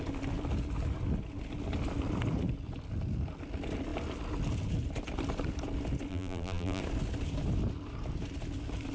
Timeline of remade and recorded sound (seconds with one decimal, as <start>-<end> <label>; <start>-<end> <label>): 0.0-6.1 recorded; 6.1-6.8 remade; 6.8-8.9 recorded